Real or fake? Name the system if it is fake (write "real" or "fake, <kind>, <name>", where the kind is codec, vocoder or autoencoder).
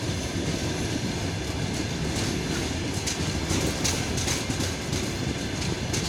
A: real